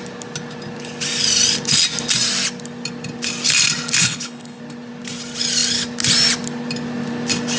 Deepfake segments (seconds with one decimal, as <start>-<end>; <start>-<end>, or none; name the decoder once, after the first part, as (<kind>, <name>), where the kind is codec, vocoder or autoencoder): 4.0-4.6 (codec, HILCodec)